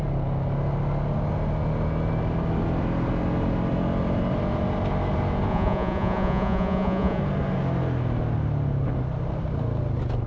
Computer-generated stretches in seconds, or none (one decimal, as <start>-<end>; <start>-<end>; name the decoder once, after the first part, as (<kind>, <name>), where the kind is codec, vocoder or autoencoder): 5.5-7.2 (vocoder, Vocos)